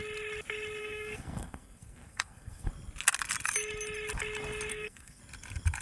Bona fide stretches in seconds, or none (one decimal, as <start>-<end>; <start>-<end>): 0.0-0.8; 2.7-4.7; 5.2-5.8